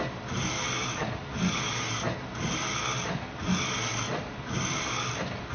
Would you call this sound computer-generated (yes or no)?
no